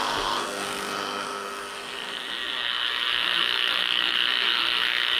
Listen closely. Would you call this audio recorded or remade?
remade